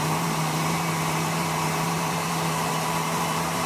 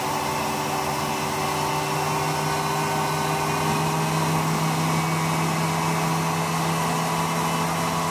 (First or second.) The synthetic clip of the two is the first